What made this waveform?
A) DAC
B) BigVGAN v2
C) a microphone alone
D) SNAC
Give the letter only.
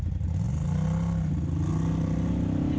C